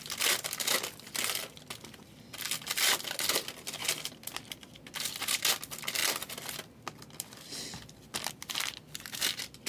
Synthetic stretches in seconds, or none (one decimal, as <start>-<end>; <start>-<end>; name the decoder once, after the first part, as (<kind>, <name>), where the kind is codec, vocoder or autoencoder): none